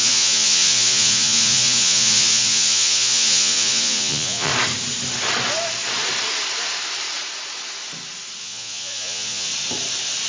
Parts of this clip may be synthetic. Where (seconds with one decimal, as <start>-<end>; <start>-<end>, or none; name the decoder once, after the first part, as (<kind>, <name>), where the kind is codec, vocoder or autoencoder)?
0.0-4.5 (vocoder, Vocos); 8.4-9.5